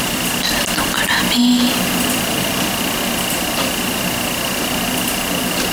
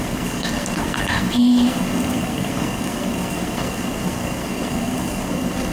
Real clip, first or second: first